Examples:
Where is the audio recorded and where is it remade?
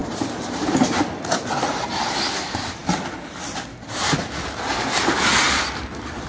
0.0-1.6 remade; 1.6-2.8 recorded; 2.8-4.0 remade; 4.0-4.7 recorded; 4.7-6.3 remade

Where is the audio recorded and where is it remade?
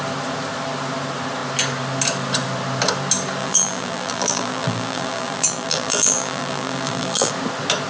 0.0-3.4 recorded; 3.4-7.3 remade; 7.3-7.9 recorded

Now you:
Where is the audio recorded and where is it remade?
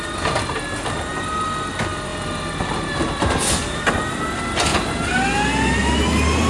0.0-6.5 recorded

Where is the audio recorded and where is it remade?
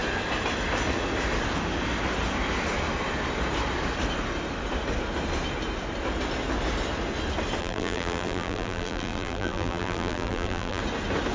0.0-7.6 recorded; 7.6-10.8 remade; 10.8-11.3 recorded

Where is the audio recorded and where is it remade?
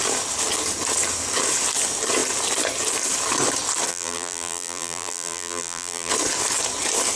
0.0-3.9 recorded; 3.9-6.1 remade; 6.1-7.2 recorded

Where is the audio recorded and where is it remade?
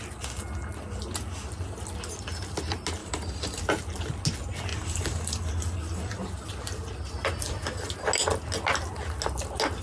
0.0-3.0 recorded; 3.0-3.6 remade; 3.6-4.7 recorded; 4.7-6.5 remade; 6.5-9.8 recorded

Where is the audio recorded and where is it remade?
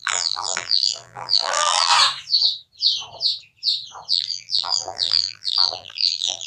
0.0-1.9 remade; 1.9-4.1 recorded; 4.1-6.5 remade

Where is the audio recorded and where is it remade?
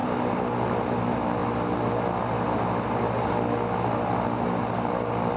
0.0-5.4 recorded